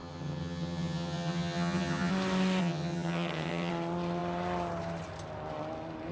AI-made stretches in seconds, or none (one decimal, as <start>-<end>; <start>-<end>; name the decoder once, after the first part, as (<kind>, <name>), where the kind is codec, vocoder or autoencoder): 0.0-2.1 (vocoder, HiFi-GAN); 2.6-3.7